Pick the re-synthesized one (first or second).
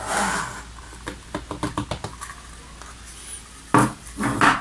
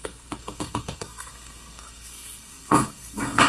second